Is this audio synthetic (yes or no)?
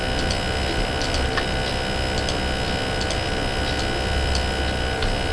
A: no